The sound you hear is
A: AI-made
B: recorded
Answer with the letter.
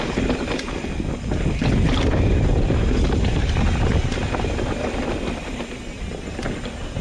B